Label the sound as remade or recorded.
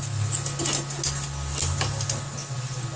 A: recorded